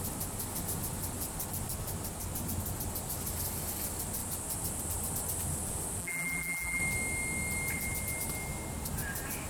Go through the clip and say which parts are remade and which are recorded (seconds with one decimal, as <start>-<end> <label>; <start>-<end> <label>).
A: 0.0-6.0 recorded; 6.0-6.8 remade; 6.8-9.5 recorded